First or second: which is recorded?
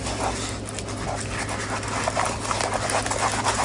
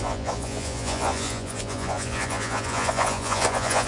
first